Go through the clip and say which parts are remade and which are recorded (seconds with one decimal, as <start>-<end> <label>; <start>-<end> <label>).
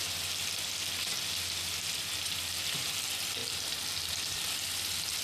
0.0-5.2 recorded